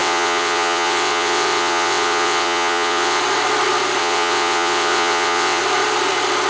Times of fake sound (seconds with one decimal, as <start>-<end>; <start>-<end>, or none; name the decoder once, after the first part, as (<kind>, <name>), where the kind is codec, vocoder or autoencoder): 0.0-3.2 (vocoder, WaveNeXt); 4.0-5.6

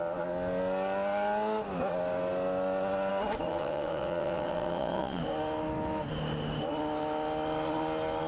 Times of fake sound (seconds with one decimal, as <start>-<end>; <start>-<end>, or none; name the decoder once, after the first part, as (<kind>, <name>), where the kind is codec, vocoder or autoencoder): 3.5-5.2 (vocoder, WaveNeXt)

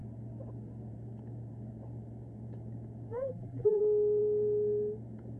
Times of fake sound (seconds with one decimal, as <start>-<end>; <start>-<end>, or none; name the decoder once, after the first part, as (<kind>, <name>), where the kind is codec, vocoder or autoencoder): 3.1-3.8 (vocoder, BigVGAN v2)

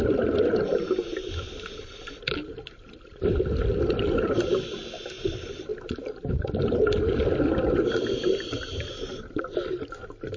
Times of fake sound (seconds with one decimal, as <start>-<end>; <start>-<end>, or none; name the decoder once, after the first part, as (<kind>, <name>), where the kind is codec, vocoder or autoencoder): none

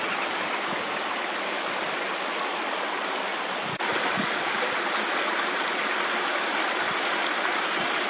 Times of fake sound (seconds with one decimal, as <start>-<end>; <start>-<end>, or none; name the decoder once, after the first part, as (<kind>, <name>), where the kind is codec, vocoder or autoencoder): none

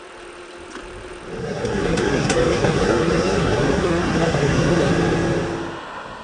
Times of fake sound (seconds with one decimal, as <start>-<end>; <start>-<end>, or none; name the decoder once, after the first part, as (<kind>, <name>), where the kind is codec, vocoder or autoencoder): 1.4-4.9 (codec, SNAC)

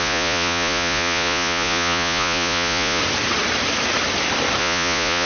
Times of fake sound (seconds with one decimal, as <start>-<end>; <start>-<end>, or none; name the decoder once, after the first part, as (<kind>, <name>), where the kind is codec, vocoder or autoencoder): 0.0-3.0 (vocoder, Vocos); 4.6-5.2